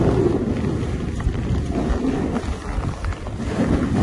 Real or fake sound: real